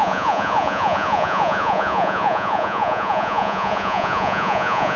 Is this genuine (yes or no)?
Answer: no